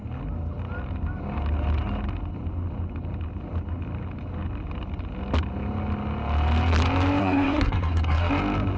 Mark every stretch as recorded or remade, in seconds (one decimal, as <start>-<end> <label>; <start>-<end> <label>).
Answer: 0.0-7.2 recorded; 7.2-8.3 remade; 8.3-8.8 recorded